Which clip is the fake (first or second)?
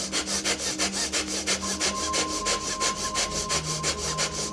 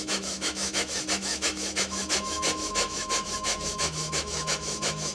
second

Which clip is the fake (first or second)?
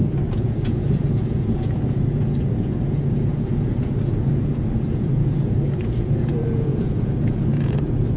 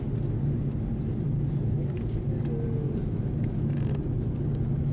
first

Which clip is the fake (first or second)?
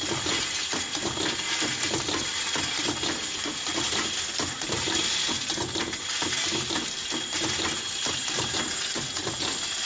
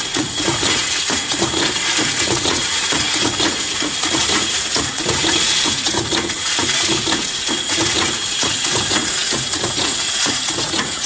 second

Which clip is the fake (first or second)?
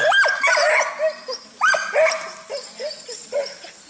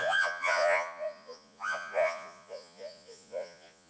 second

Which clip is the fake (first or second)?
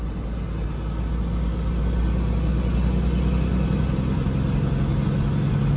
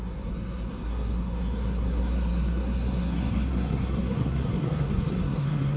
second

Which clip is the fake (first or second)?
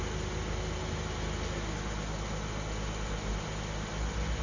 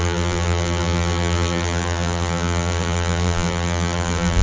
second